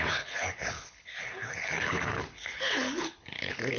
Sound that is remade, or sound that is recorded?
remade